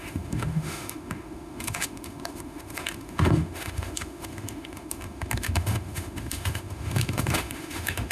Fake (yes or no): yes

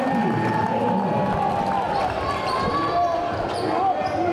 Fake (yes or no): no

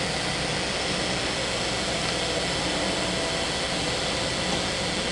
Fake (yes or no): no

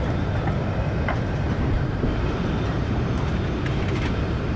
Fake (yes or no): yes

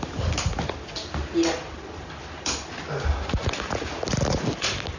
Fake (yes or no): no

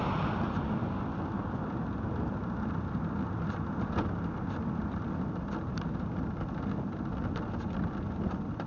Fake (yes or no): no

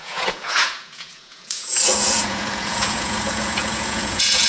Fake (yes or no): yes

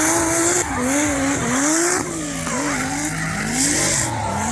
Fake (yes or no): no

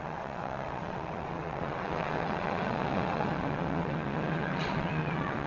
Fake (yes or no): yes